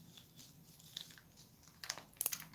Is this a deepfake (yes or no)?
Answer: no